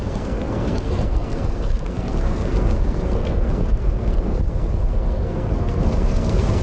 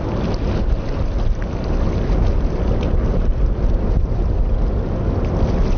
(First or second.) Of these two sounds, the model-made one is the first